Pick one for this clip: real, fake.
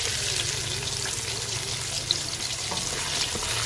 real